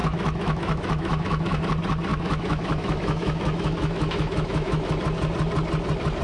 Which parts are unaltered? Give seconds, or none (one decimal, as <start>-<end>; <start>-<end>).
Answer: 1.6-2.1; 5.0-6.2